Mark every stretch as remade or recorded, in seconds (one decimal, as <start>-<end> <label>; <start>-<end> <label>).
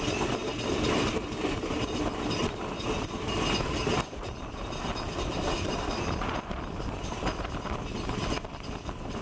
0.0-9.2 recorded